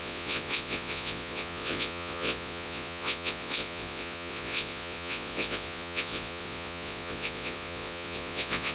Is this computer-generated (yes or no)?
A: yes